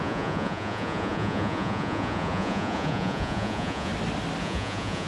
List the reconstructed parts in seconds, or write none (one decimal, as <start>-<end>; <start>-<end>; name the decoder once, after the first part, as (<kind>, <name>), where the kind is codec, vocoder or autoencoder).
0.0-3.9 (vocoder, Vocos); 4.4-5.1